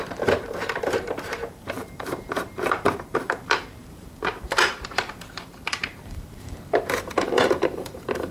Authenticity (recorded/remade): remade